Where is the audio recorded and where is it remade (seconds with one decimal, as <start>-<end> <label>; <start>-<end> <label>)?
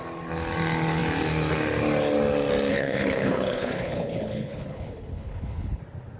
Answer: 0.0-2.7 recorded; 2.7-5.8 remade; 5.8-6.2 recorded